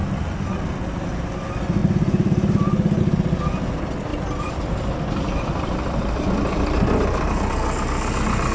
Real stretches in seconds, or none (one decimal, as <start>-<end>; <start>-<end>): 0.5-4.1; 7.3-8.5